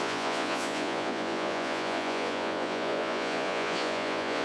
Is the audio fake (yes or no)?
yes